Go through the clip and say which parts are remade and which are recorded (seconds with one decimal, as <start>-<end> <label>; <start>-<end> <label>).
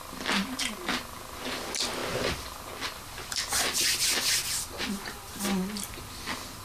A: 0.0-6.6 recorded